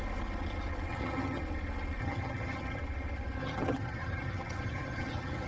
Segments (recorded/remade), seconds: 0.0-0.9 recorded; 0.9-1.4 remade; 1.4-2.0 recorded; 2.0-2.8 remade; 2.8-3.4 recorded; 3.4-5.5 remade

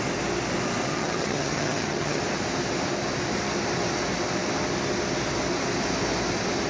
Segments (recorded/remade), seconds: 0.0-0.9 recorded; 0.9-2.2 remade; 2.2-6.7 recorded